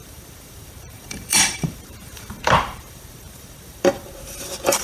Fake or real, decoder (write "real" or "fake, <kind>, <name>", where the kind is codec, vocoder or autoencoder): fake, vocoder, BigVGAN v2